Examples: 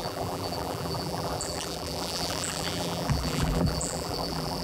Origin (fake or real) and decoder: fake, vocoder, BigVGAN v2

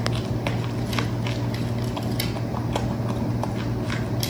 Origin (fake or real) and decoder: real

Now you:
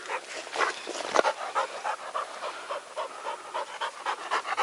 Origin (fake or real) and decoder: real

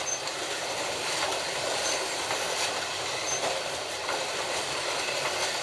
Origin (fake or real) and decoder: real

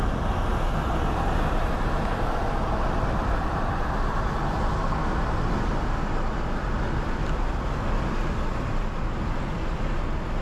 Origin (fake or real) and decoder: real